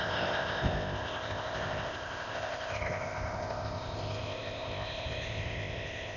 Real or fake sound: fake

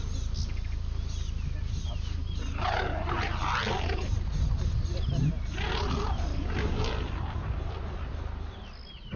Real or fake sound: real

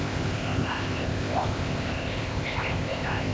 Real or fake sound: fake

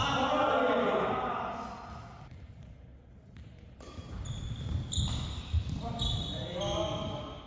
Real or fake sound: real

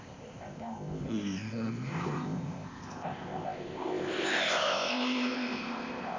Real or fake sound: fake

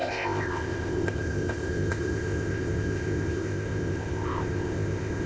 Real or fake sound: fake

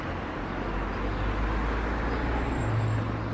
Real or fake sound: real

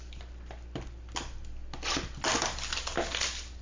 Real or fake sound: real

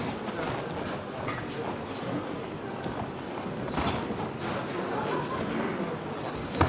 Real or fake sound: real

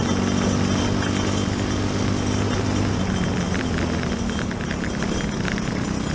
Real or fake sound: real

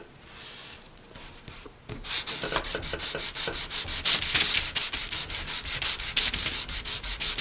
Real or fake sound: real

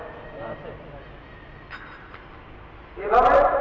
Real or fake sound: real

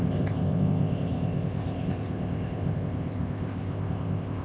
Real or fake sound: fake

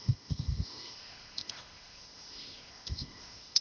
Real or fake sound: fake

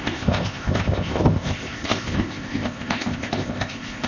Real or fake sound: fake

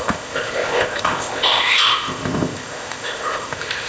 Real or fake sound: fake